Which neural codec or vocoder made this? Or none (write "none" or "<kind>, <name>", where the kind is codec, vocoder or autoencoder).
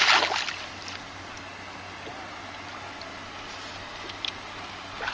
none